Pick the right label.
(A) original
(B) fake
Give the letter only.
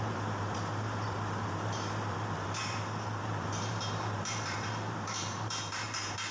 B